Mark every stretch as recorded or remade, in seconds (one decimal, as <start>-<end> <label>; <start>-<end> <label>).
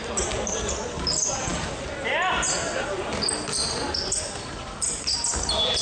0.0-5.8 recorded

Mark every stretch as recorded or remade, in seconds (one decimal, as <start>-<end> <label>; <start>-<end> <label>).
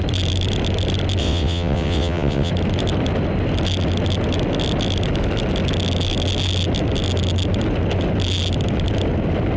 0.0-1.2 recorded; 1.2-2.5 remade; 2.5-9.6 recorded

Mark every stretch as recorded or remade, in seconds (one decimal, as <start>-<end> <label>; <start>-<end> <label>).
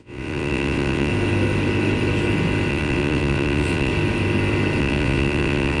0.0-1.1 remade; 1.1-2.7 recorded; 2.7-3.9 remade; 3.9-4.8 recorded; 4.8-5.8 remade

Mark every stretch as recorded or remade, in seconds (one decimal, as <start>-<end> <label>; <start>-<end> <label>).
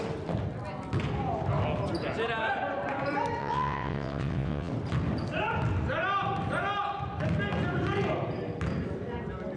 0.0-3.4 recorded; 3.4-4.7 remade; 4.7-9.6 recorded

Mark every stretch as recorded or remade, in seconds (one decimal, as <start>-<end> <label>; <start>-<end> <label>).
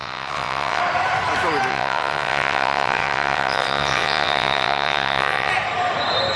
0.0-0.8 remade; 0.8-1.7 recorded; 1.7-5.5 remade; 5.5-6.4 recorded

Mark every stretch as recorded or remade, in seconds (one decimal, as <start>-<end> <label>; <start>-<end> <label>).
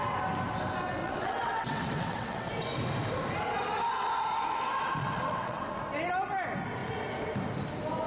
0.0-1.0 recorded; 1.0-2.5 remade; 2.5-5.0 recorded; 5.0-5.6 remade; 5.6-8.1 recorded